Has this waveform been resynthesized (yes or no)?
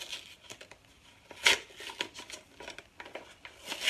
no